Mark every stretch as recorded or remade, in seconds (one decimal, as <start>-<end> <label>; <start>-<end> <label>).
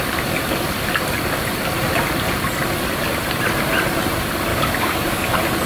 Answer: 0.0-4.5 recorded; 4.5-5.3 remade; 5.3-5.7 recorded